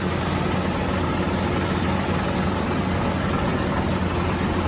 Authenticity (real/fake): real